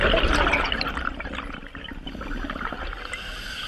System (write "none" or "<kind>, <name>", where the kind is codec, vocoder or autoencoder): none